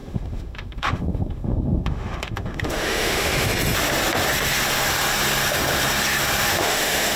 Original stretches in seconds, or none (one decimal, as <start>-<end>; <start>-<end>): 3.5-6.5